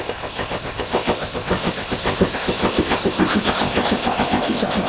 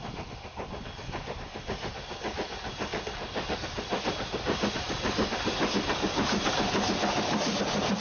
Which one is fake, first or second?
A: first